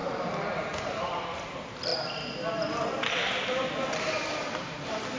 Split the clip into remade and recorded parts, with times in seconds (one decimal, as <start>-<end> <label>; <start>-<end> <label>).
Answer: 0.0-1.9 remade; 1.9-5.2 recorded